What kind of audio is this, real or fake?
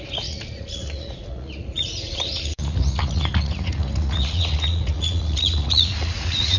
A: fake